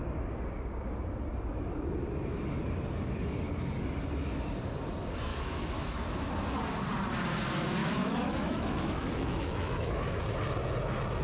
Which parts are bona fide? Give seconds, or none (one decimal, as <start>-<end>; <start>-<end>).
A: 0.0-5.3; 6.3-7.8; 10.2-11.2